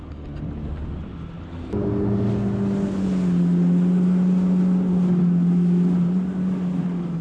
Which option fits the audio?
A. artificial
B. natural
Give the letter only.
B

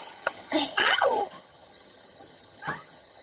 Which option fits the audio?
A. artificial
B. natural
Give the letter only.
A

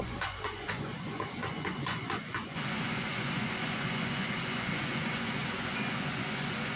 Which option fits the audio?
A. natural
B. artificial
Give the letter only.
B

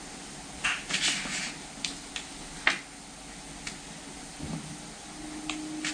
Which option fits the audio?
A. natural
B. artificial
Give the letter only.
A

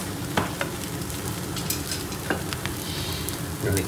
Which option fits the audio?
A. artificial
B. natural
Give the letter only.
A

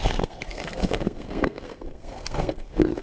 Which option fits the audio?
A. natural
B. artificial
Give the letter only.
B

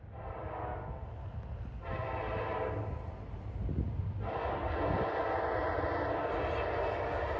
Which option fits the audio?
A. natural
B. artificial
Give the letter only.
A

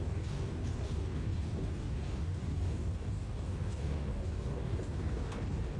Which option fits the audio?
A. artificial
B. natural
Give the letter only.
A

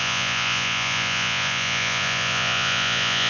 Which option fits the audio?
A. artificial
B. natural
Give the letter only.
A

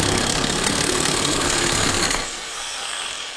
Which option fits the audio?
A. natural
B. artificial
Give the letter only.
B